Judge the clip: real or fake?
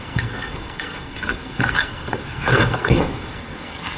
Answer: fake